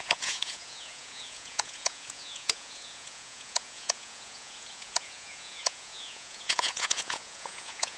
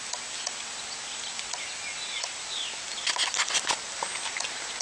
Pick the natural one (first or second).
second